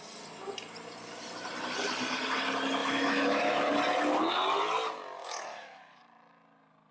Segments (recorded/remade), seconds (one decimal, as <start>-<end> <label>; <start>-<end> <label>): 0.0-2.8 recorded; 2.8-3.7 remade; 3.7-5.2 recorded; 5.2-6.0 remade; 6.0-6.9 recorded